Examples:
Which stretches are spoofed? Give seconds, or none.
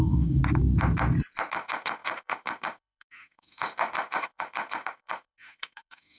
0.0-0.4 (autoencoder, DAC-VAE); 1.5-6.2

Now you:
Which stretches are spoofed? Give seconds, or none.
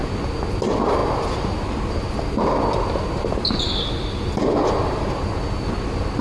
none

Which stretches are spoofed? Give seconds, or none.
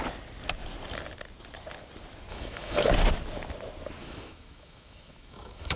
2.3-2.9 (autoencoder, DAC-VAE); 4.0-5.8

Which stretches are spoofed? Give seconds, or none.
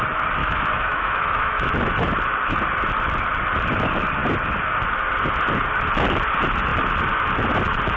0.4-1.7 (autoencoder, DAC-VAE)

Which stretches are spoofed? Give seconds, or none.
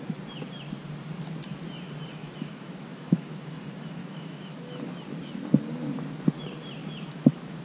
2.2-3.5 (autoencoder, DAC-VAE); 4.0-4.9; 6.8-7.6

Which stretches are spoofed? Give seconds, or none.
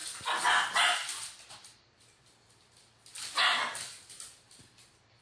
none